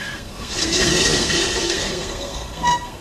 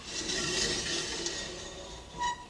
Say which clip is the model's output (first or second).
first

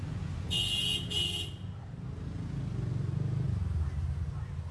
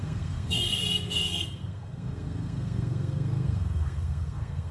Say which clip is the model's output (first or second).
second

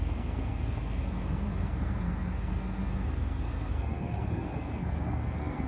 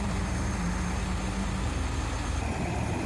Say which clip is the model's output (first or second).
first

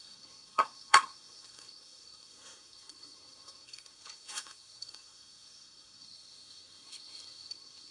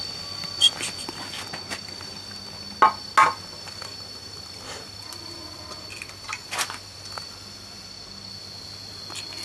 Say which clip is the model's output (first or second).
first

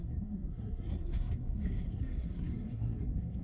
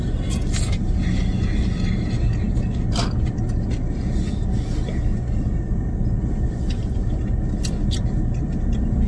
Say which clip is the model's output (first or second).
first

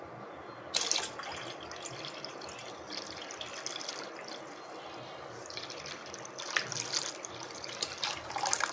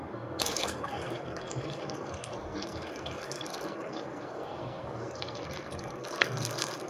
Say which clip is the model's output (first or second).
second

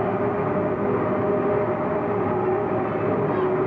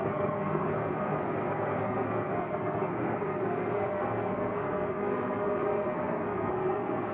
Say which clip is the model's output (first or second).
second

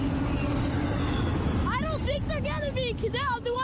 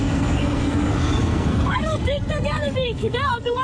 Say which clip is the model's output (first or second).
second